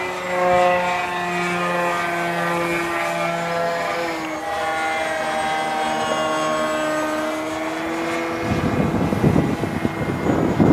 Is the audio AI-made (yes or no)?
no